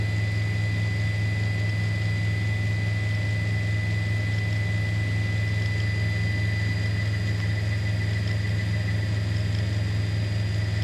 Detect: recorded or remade recorded